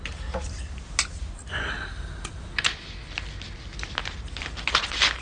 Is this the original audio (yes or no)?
yes